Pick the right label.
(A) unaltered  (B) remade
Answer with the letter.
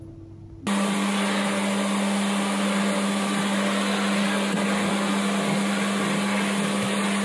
A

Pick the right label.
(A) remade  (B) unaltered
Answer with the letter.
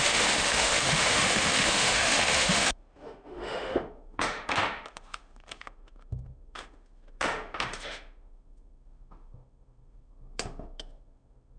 A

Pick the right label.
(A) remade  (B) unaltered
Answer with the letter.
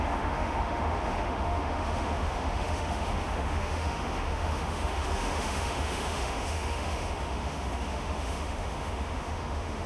A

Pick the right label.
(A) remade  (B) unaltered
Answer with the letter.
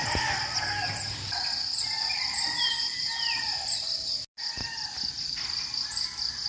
B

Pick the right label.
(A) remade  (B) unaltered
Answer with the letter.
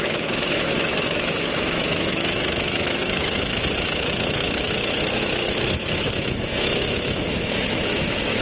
A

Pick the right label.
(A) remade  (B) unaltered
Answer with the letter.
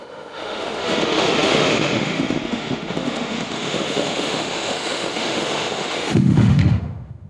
A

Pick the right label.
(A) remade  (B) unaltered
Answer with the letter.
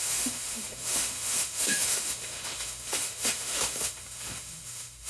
A